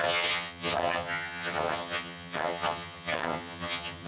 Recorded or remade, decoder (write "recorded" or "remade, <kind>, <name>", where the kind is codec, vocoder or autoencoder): remade, vocoder, HiFi-GAN